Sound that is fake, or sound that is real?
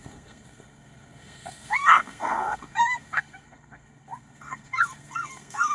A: fake